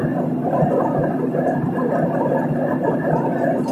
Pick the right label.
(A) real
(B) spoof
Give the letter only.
A